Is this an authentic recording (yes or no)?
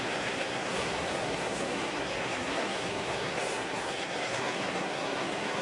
no